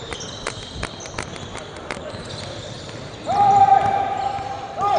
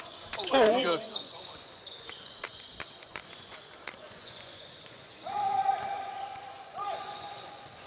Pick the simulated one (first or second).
second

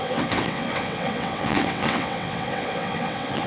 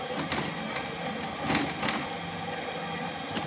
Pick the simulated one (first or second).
first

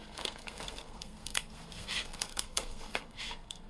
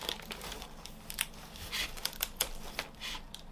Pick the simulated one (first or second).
first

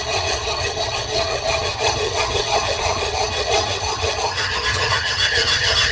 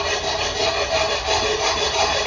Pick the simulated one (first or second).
first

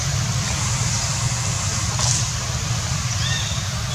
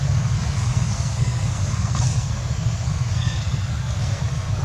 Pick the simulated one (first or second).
second